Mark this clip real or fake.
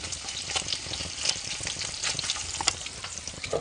real